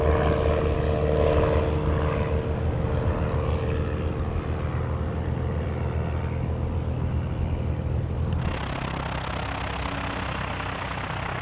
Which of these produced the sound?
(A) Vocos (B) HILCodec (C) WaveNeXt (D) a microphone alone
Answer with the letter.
D